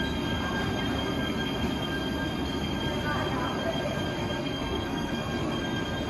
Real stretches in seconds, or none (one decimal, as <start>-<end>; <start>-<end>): 0.0-4.4; 5.5-6.1